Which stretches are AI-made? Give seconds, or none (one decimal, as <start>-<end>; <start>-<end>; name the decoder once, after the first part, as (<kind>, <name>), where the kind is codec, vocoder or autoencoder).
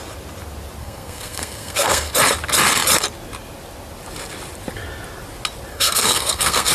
0.8-2.1 (codec, SNAC); 5.7-6.7